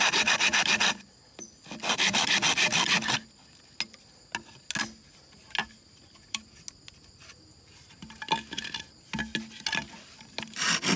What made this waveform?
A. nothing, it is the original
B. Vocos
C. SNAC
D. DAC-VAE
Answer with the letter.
A